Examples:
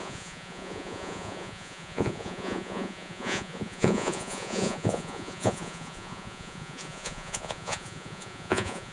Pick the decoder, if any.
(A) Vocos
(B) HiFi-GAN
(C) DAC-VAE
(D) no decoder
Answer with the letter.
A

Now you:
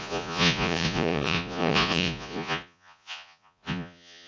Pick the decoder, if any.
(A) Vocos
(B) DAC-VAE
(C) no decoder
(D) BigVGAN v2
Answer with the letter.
A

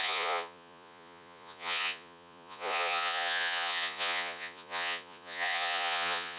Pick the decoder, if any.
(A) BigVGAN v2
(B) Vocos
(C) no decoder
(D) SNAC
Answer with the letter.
B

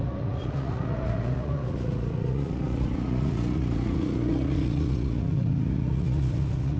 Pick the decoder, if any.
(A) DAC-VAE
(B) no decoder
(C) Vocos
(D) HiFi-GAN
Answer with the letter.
C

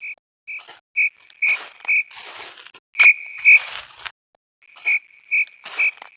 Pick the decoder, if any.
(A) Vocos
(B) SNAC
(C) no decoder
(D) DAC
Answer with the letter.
C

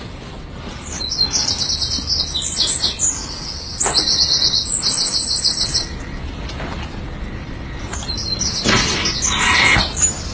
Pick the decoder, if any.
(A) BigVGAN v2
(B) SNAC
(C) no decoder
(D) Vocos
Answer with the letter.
C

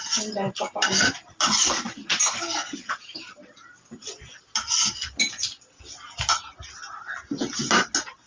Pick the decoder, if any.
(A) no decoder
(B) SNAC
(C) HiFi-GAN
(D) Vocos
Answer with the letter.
A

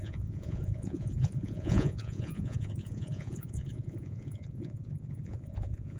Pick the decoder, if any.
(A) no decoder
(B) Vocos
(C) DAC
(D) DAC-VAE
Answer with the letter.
B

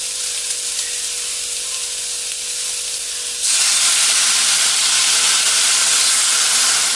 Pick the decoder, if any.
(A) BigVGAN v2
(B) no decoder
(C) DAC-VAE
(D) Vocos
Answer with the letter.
B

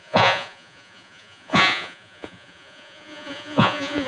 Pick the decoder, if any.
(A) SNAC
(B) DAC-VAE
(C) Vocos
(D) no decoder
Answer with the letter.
C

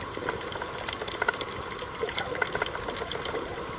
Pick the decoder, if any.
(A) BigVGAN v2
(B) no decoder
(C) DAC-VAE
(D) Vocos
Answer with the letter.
B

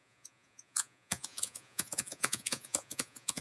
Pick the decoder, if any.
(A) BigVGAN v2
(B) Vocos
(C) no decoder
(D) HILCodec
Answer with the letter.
B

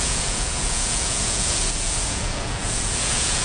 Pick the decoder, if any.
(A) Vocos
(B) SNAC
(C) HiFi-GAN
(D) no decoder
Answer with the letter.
A